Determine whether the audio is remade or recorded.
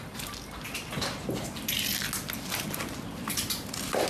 recorded